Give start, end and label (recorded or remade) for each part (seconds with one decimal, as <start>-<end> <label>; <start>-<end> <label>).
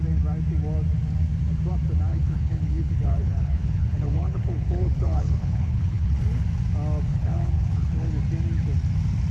0.0-2.1 recorded; 2.1-6.2 remade; 6.2-7.1 recorded; 7.1-8.1 remade; 8.1-9.3 recorded